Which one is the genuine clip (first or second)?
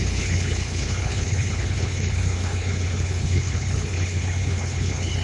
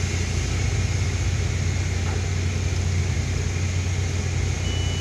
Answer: second